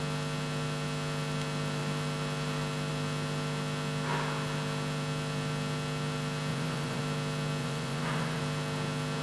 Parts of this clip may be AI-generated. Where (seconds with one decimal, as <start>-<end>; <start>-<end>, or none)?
6.5-7.0; 7.6-8.4